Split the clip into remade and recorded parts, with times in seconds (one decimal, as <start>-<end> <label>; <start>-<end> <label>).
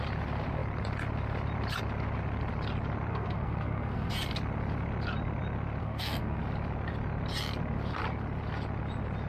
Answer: 0.0-3.1 recorded; 3.1-4.1 remade; 4.1-5.8 recorded; 5.8-6.4 remade; 6.4-9.3 recorded